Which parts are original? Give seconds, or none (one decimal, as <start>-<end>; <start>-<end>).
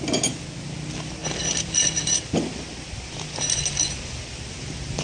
0.0-5.0